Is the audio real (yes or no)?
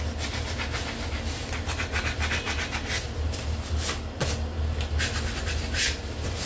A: yes